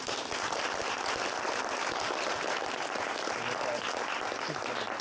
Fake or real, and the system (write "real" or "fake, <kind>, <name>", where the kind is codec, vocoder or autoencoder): real